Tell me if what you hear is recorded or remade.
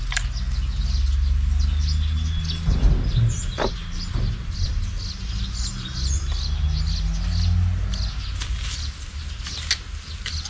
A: recorded